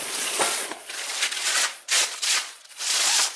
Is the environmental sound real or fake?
fake